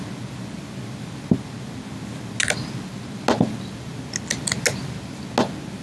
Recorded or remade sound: recorded